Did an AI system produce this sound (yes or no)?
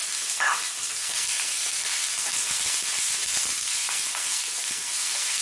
yes